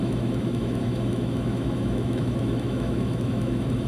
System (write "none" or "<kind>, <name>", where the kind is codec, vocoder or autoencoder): autoencoder, DAC-VAE